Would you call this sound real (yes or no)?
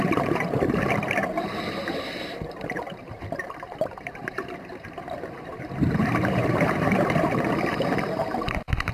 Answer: no